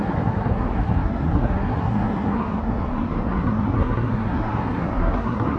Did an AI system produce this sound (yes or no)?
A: yes